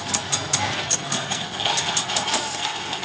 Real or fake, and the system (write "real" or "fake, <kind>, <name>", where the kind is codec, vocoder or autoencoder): fake, codec, SNAC